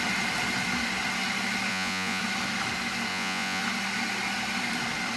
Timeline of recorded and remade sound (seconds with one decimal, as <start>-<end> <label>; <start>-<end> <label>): 0.0-1.7 recorded; 1.7-2.2 remade; 2.2-3.1 recorded; 3.1-3.6 remade; 3.6-5.2 recorded